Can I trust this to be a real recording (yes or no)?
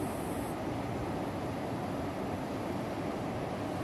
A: yes